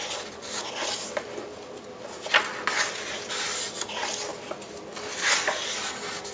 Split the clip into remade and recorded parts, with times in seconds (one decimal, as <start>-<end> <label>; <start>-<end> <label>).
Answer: 0.0-4.3 recorded; 4.3-6.3 remade